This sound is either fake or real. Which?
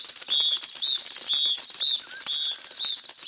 real